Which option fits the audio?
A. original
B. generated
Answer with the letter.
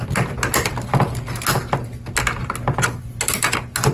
A